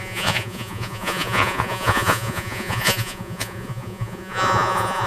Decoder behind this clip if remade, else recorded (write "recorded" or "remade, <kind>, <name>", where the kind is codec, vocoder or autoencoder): remade, vocoder, Vocos